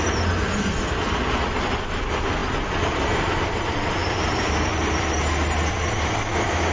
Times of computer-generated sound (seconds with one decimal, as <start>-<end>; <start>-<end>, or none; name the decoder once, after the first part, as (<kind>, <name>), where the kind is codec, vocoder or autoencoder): none